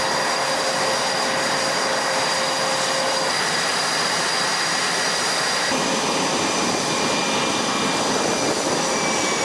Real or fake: real